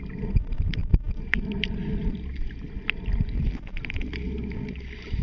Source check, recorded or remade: recorded